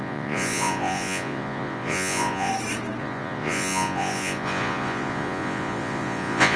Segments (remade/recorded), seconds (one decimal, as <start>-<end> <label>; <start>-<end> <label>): 0.0-2.5 remade; 2.5-3.0 recorded; 3.0-6.6 remade